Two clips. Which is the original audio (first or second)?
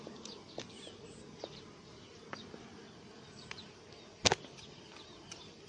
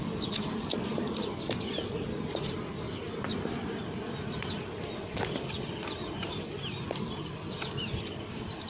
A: first